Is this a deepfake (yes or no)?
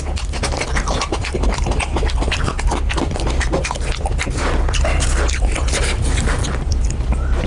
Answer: no